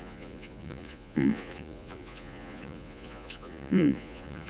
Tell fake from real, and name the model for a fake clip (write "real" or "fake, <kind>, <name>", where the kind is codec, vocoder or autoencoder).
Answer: fake, vocoder, Vocos